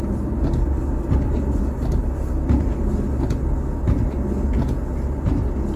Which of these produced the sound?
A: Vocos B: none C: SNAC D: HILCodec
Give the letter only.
B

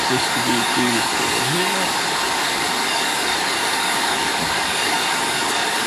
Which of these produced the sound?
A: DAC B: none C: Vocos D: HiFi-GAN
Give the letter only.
A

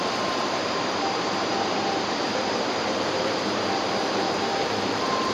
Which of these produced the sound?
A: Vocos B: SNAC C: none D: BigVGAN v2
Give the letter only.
D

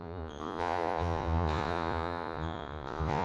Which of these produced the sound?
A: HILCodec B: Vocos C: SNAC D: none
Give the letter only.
B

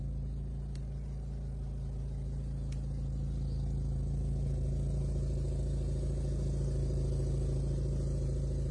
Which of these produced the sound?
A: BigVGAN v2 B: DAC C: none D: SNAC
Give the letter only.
C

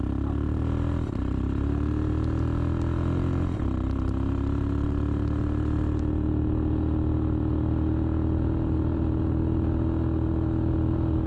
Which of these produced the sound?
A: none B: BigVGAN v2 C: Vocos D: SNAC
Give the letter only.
A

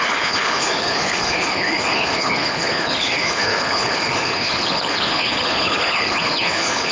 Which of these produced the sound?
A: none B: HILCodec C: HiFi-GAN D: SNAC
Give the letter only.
B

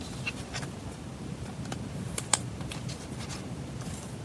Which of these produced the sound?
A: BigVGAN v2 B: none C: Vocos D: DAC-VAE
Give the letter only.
A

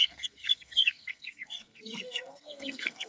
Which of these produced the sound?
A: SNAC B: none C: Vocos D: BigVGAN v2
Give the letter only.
A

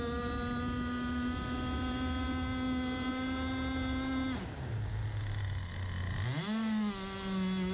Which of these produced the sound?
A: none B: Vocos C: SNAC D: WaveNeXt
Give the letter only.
A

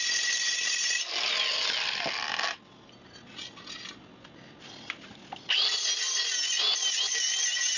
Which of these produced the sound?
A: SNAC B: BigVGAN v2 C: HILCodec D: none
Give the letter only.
D